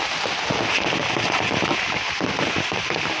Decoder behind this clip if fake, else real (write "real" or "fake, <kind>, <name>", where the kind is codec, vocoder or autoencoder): real